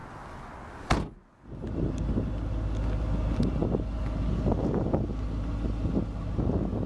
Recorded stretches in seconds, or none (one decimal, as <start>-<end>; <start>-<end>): 0.0-6.9